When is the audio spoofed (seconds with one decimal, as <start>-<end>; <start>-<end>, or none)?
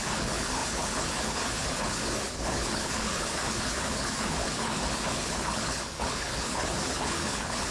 0.0-7.7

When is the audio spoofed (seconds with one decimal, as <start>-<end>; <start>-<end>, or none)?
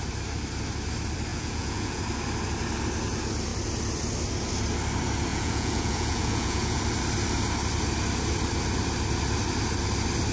1.3-2.0; 5.3-6.8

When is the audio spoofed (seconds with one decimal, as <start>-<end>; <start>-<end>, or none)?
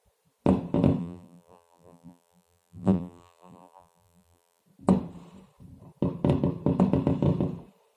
1.0-4.6